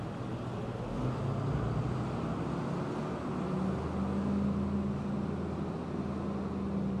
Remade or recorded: recorded